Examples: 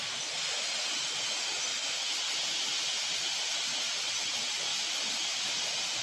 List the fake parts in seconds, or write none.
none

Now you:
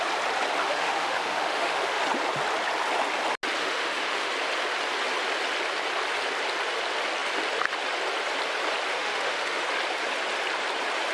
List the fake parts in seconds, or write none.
0.6-2.0 (autoencoder, DAC-VAE); 3.6-4.3; 8.9-9.6

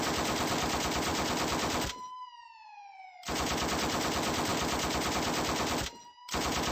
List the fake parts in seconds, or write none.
none